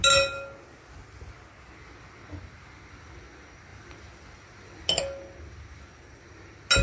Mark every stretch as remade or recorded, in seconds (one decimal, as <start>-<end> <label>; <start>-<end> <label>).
0.0-6.8 recorded